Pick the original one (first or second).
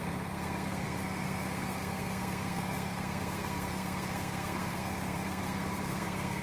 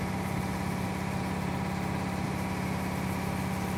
second